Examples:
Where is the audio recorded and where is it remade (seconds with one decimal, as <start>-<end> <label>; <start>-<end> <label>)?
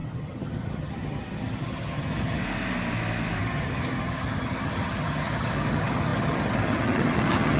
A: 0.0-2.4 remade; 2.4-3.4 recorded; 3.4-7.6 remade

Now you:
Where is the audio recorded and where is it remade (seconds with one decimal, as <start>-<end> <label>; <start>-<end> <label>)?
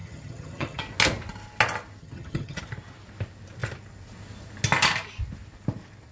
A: 0.0-0.8 remade; 0.8-2.0 recorded; 2.0-2.6 remade; 2.6-6.1 recorded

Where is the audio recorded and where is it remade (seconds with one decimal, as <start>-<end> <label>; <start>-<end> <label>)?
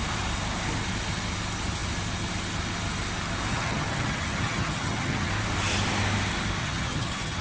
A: 0.0-3.5 recorded; 3.5-5.3 remade; 5.3-6.6 recorded; 6.6-7.4 remade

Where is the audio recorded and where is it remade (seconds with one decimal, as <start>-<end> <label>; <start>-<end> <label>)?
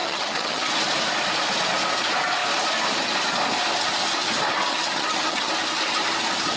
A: 0.0-0.7 remade; 0.7-4.7 recorded; 4.7-5.5 remade; 5.5-6.6 recorded